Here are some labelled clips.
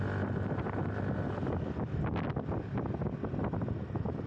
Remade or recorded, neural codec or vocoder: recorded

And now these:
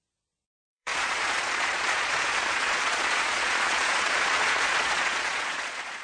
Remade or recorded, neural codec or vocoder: remade, vocoder, Vocos